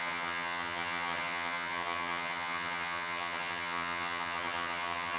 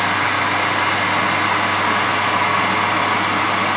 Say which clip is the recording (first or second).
second